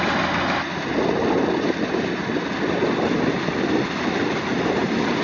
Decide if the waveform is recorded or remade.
recorded